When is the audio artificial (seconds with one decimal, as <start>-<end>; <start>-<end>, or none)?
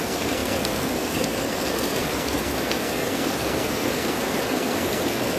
0.0-5.4